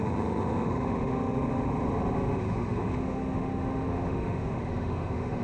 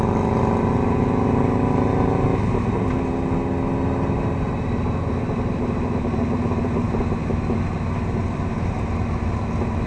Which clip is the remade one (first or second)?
first